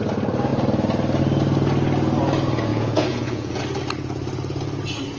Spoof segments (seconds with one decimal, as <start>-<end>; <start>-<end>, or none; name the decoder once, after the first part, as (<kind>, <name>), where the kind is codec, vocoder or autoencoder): 2.7-3.6 (vocoder, Vocos)